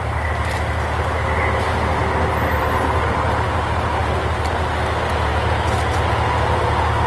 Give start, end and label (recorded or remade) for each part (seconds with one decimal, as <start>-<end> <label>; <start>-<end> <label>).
0.0-4.0 recorded; 4.0-4.5 remade; 4.5-7.1 recorded